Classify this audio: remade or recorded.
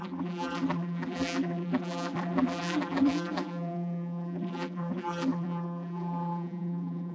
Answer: remade